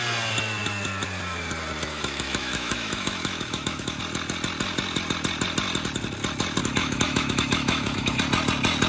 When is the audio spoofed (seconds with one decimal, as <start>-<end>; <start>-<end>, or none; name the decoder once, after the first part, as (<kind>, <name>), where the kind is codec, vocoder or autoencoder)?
1.9-4.0 (autoencoder, DAC-VAE); 6.6-8.2